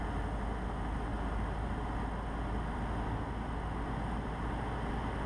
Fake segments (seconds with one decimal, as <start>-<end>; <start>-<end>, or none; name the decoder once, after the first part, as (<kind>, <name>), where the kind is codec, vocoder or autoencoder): none